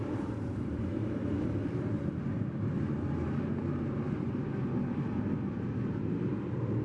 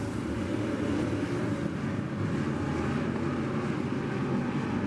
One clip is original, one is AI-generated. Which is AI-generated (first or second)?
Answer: first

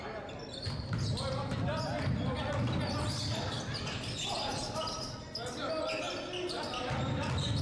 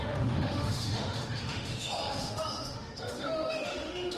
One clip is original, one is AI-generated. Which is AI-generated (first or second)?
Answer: second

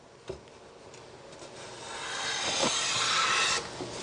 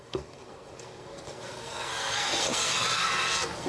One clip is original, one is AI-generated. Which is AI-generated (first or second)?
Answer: second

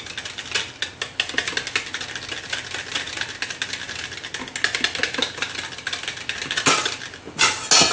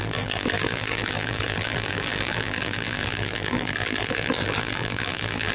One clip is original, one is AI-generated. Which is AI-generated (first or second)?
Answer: second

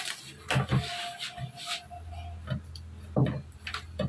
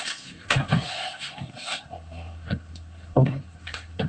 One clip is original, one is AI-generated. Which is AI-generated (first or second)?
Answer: second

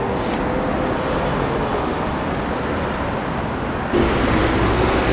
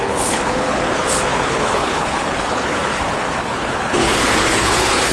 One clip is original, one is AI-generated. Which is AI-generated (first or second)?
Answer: second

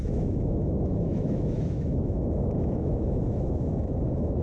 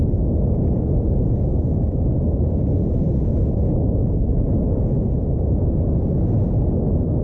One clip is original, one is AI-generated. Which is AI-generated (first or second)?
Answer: first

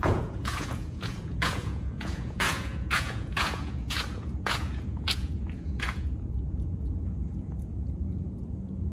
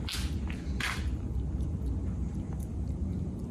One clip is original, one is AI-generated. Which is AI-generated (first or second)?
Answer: first